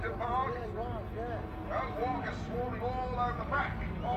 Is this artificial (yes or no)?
no